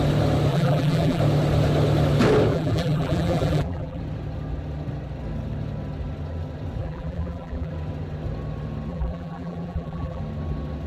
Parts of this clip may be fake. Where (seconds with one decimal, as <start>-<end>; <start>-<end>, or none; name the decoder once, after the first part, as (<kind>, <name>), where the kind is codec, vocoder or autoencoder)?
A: 0.5-1.2 (vocoder, BigVGAN v2); 2.5-4.0; 6.8-7.7; 8.9-10.2